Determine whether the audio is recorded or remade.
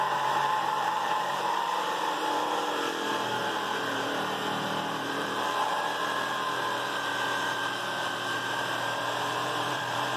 remade